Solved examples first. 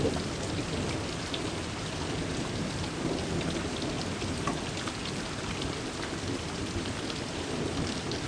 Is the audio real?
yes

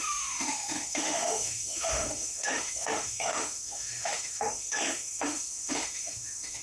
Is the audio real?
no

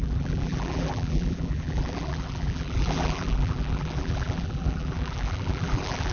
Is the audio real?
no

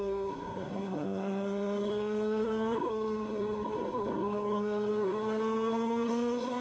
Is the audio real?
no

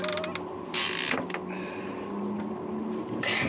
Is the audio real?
yes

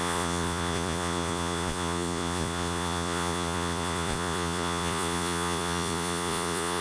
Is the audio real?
no